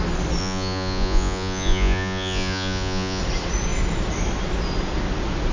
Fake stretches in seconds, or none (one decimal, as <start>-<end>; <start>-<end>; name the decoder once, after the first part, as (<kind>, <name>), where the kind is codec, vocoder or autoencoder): 0.4-3.2 (vocoder, Vocos)